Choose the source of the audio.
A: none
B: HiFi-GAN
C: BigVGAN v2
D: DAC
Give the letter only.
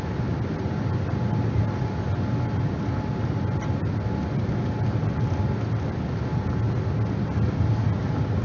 A